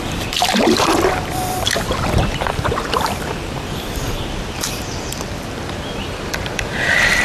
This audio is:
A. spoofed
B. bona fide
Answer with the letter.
A